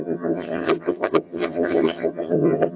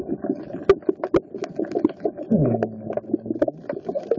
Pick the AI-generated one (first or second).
first